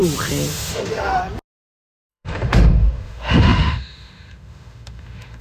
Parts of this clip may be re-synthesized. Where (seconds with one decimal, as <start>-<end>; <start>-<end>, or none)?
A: 0.5-1.2; 2.1-5.4